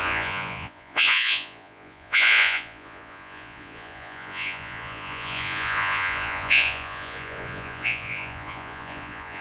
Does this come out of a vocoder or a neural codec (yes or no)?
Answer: yes